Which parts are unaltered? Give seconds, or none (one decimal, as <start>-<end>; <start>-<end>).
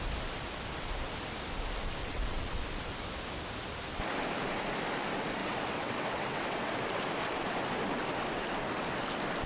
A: 0.0-2.0; 2.6-5.4; 6.7-9.5